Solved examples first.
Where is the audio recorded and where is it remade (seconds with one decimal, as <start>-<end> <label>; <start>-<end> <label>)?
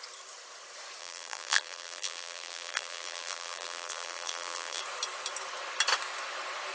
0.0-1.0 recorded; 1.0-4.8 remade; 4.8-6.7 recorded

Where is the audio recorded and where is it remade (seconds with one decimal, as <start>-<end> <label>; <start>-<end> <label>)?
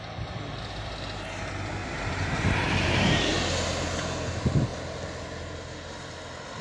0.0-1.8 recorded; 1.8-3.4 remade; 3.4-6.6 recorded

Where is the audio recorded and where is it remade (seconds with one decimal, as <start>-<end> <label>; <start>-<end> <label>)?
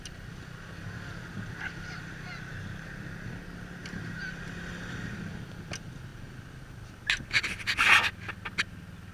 0.0-9.1 recorded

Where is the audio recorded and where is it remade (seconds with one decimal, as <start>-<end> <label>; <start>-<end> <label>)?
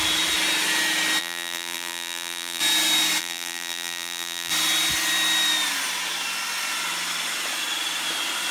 0.0-1.2 recorded; 1.2-2.6 remade; 2.6-3.2 recorded; 3.2-4.5 remade; 4.5-8.5 recorded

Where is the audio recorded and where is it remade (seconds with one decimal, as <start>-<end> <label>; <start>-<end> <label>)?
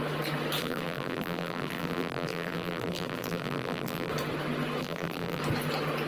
0.0-0.6 recorded; 0.6-4.1 remade; 4.1-4.8 recorded; 4.8-5.4 remade; 5.4-6.1 recorded